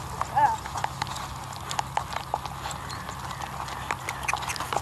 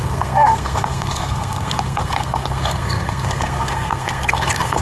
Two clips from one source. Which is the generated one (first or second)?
second